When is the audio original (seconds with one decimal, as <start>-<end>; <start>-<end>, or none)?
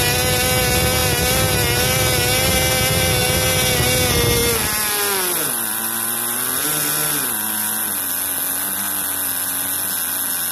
0.0-10.5